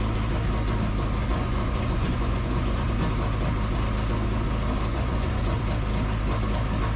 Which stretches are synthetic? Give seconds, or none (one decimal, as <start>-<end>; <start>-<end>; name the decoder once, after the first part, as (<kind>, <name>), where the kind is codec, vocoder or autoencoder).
1.2-2.9 (vocoder, Vocos); 4.9-5.6

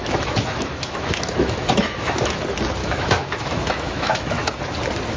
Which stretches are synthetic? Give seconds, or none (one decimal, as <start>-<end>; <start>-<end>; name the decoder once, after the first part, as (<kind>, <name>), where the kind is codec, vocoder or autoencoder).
0.0-2.4 (autoencoder, DAC-VAE); 2.8-4.6

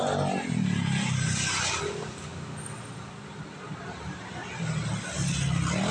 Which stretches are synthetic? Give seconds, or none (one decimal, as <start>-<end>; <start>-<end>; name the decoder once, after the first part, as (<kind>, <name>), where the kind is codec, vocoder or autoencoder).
none

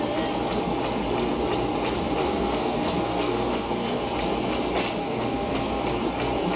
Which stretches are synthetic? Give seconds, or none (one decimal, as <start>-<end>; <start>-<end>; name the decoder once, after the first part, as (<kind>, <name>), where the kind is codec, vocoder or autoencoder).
2.2-4.0 (codec, SNAC); 5.0-5.8

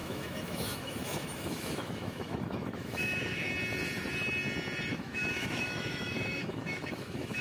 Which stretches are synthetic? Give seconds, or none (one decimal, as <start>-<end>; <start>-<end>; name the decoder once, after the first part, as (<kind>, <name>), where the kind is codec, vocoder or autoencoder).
0.0-3.5 (autoencoder, DAC-VAE); 4.9-7.4

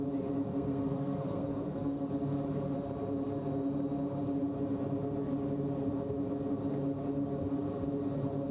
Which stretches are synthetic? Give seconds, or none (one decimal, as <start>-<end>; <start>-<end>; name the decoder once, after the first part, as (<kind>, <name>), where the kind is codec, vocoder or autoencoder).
0.5-2.1 (codec, SNAC)

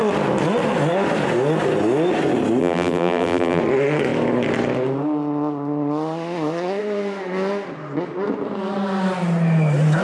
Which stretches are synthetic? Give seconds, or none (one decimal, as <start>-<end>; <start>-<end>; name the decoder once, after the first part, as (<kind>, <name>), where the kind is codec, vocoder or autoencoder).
2.6-3.6 (vocoder, BigVGAN v2)

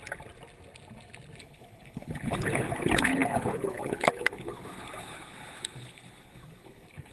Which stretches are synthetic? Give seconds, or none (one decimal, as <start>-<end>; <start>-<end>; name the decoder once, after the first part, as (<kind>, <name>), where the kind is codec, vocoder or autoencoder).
1.4-7.1 (codec, HILCodec)